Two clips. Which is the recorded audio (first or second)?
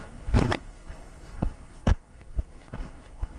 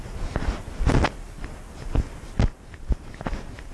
second